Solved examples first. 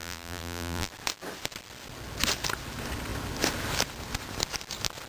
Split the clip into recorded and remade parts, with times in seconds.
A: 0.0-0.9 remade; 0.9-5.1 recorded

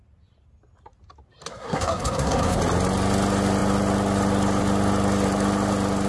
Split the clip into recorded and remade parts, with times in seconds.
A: 0.0-1.5 recorded; 1.5-2.6 remade; 2.6-6.1 recorded

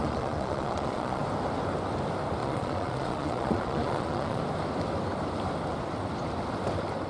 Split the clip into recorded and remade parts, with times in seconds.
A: 0.0-1.2 remade; 1.2-2.4 recorded; 2.4-4.4 remade; 4.4-7.1 recorded

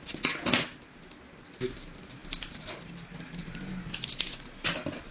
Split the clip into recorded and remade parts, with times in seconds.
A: 0.0-5.1 recorded

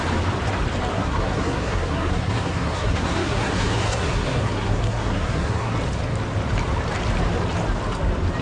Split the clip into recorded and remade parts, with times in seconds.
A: 0.0-0.9 recorded; 0.9-5.7 remade; 5.7-8.4 recorded

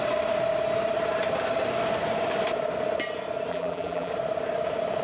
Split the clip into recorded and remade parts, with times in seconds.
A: 0.0-3.5 recorded; 3.5-4.1 remade; 4.1-5.0 recorded

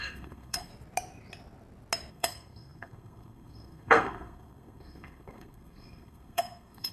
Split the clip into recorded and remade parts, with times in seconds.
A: 0.0-0.7 remade; 0.7-2.1 recorded; 2.1-6.9 remade